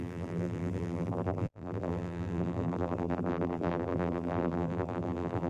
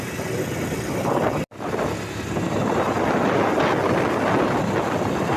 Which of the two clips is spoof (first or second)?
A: first